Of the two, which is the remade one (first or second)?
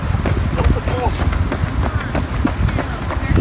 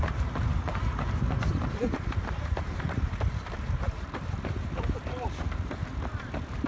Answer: second